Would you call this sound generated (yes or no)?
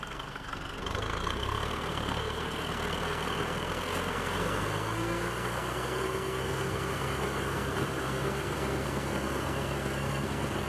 yes